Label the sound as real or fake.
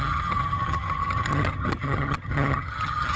fake